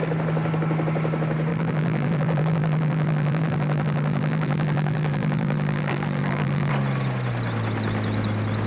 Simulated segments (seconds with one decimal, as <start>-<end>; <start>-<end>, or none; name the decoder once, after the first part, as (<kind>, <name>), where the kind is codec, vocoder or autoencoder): 1.5-6.7 (vocoder, BigVGAN v2)